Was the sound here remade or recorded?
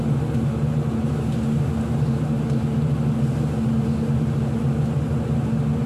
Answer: recorded